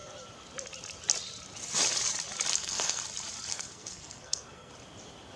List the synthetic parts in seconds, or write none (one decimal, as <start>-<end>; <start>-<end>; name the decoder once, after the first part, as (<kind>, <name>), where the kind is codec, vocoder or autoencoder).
2.5-3.0 (codec, SNAC); 3.5-4.7